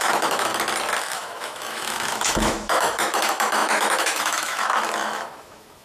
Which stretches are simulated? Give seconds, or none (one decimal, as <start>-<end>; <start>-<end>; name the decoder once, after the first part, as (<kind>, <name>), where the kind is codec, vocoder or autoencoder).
0.0-0.5 (autoencoder, DAC-VAE); 1.0-5.8